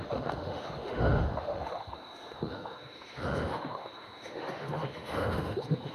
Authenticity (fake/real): fake